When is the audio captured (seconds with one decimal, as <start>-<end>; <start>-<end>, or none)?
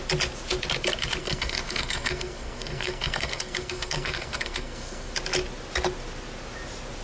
0.0-1.2; 5.1-7.0